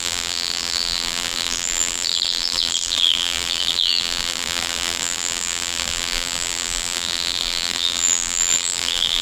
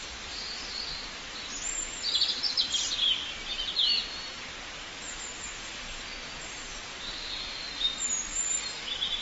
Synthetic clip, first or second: first